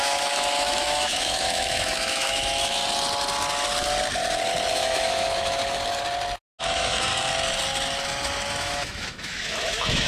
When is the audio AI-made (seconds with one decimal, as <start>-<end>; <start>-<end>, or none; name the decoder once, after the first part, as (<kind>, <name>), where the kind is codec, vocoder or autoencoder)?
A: 0.0-2.8 (autoencoder, DAC-VAE); 4.7-5.6; 6.6-7.1; 8.5-10.1